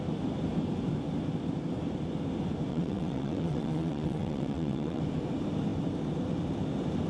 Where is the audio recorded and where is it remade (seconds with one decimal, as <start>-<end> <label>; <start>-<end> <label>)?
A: 0.0-2.7 recorded; 2.7-5.0 remade; 5.0-7.1 recorded